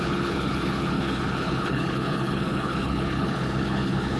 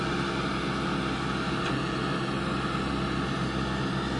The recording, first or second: second